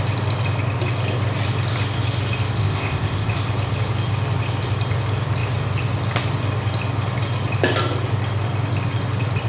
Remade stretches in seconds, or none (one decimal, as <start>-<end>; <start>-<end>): 2.6-3.3